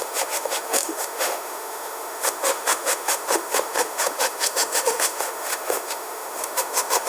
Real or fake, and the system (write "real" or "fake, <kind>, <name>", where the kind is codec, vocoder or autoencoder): fake, autoencoder, DAC-VAE